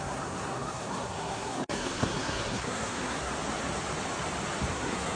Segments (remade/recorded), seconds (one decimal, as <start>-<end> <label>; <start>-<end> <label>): 0.0-3.3 remade; 3.3-4.7 recorded; 4.7-5.2 remade